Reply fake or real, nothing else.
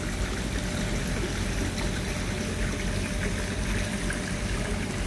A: real